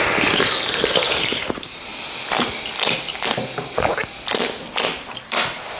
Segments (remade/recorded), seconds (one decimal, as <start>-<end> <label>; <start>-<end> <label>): 0.0-5.8 recorded